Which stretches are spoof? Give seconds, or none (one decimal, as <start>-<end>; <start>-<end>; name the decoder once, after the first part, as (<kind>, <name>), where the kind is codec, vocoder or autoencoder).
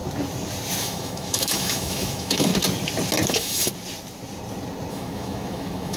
0.8-2.5 (autoencoder, DAC-VAE); 3.3-3.7; 4.9-6.0